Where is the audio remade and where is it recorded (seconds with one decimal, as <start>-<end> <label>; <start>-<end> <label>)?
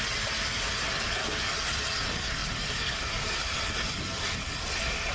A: 0.0-2.4 recorded; 2.4-3.5 remade; 3.5-5.1 recorded